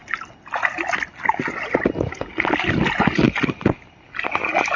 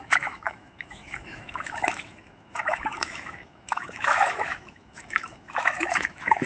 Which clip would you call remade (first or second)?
second